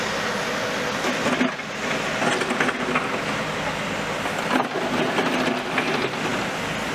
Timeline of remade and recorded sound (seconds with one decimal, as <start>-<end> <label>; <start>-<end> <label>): 0.0-6.9 recorded